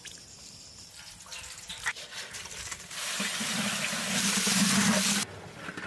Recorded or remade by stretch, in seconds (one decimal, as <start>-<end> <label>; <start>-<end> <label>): 0.0-5.9 recorded